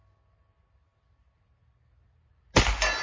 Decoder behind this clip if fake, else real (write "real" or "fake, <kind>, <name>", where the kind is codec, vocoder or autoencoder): real